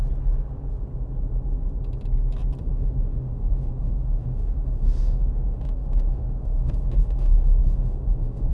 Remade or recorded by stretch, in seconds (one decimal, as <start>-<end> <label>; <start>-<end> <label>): 0.0-2.6 recorded; 2.6-8.5 remade